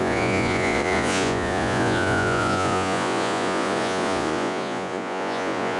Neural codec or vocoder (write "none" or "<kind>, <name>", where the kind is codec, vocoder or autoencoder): vocoder, Vocos